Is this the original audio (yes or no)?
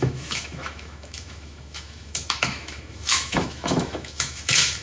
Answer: no